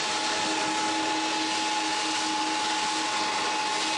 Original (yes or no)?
yes